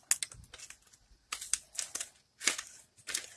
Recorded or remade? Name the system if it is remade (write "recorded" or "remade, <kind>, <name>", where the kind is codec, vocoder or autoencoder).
recorded